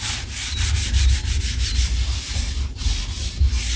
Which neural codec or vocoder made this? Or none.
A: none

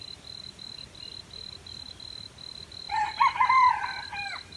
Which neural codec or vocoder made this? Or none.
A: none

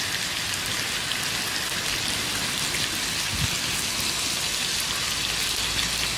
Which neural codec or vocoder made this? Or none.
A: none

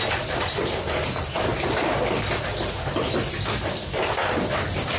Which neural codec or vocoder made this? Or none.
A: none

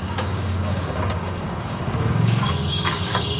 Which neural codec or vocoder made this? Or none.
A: codec, DAC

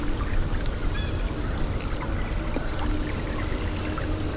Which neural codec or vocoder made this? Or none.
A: none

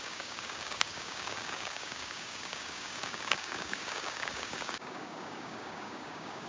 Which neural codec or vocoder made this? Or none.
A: codec, DAC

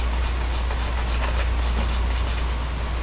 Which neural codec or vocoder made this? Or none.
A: none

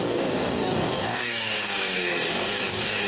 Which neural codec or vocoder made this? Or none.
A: codec, DAC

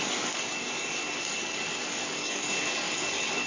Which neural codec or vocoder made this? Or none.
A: codec, DAC